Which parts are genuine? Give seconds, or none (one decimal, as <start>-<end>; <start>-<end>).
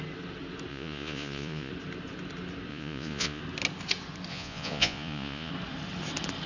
0.0-0.7; 1.7-2.7; 3.4-4.3; 5.5-6.5